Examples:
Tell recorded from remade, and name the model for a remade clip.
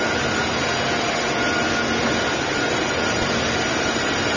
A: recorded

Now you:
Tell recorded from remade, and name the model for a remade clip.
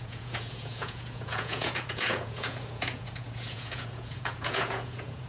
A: remade, vocoder, Vocos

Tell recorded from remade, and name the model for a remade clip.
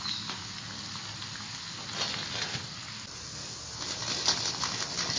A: recorded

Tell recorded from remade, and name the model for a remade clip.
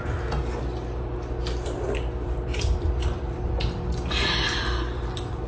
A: recorded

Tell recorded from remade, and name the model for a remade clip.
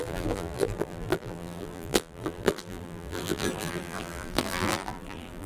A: remade, vocoder, BigVGAN v2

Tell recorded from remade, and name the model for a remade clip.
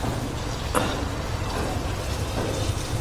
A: recorded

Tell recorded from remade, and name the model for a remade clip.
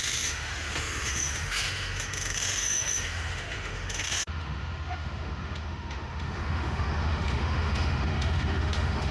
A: remade, autoencoder, DAC-VAE